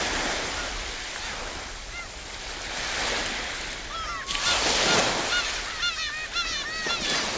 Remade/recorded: recorded